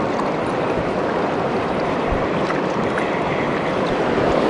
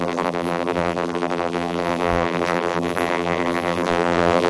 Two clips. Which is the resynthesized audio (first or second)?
second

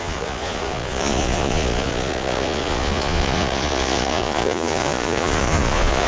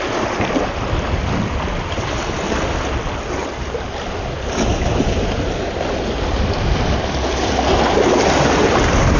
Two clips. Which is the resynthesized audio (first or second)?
first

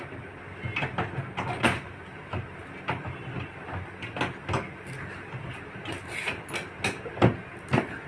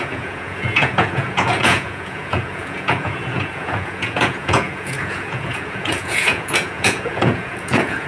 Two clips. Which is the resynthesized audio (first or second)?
second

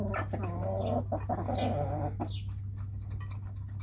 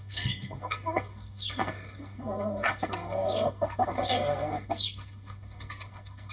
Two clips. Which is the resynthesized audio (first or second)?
second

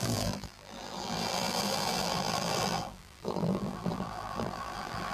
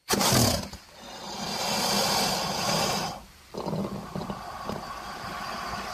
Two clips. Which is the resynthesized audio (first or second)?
first